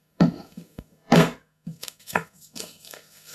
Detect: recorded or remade remade